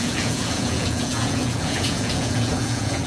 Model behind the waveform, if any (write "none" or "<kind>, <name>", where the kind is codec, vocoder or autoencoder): vocoder, Vocos